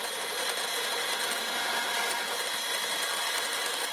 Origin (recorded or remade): recorded